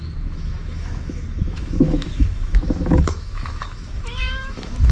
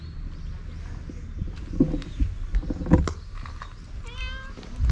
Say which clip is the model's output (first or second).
first